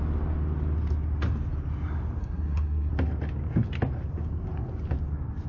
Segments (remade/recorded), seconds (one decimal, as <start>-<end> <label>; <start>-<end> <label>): 0.0-2.2 recorded; 2.2-2.9 remade; 2.9-5.5 recorded